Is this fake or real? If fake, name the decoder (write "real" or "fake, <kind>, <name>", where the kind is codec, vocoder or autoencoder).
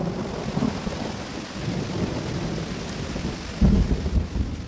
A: real